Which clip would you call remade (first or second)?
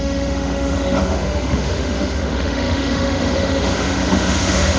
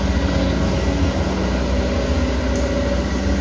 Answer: first